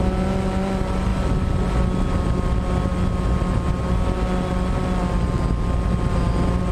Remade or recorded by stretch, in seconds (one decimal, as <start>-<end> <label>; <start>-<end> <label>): 0.0-6.7 recorded